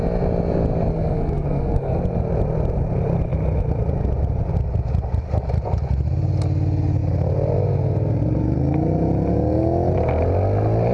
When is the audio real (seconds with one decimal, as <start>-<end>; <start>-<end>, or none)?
0.0-0.9; 2.0-10.9